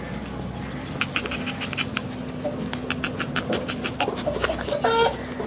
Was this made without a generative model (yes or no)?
yes